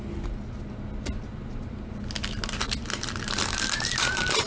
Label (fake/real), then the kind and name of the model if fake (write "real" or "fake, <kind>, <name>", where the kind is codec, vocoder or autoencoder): real